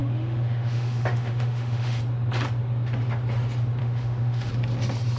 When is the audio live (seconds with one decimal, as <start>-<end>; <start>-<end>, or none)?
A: 2.0-3.8; 4.5-5.2